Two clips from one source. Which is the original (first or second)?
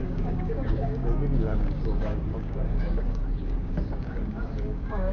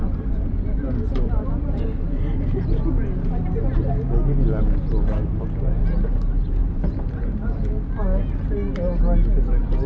second